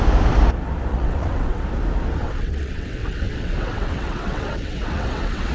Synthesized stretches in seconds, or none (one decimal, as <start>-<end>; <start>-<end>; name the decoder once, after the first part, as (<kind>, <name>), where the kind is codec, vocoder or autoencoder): 0.9-1.6 (vocoder, WaveNeXt); 2.2-5.5